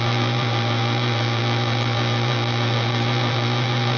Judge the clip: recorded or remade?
remade